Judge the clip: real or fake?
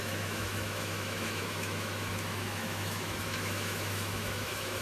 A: fake